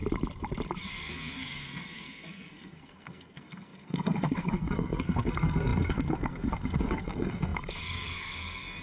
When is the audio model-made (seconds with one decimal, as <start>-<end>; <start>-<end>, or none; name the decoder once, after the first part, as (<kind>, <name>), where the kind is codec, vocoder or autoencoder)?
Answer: 0.8-8.8 (codec, SNAC)